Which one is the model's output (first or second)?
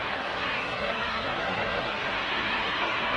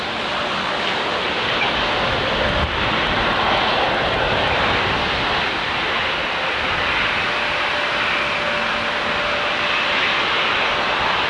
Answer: first